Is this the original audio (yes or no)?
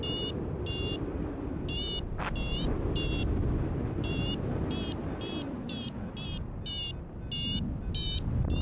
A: yes